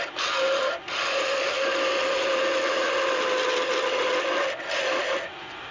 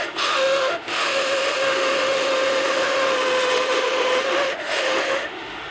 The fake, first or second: second